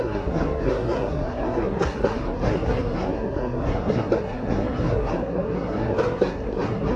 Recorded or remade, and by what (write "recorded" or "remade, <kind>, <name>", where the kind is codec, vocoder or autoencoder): remade, codec, SNAC